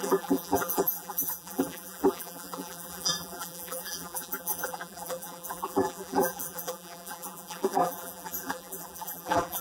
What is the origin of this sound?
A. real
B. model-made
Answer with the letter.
B